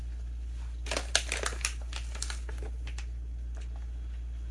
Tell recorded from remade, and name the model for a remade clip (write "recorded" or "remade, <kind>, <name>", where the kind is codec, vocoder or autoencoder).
recorded